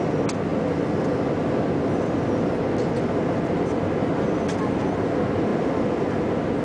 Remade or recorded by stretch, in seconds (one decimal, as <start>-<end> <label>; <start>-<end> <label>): 0.0-6.6 recorded